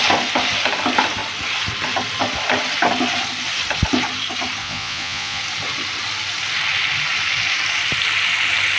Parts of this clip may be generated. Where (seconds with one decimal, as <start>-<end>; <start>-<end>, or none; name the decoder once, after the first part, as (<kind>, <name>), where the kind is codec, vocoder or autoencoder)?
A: 4.6-5.4 (vocoder, Vocos)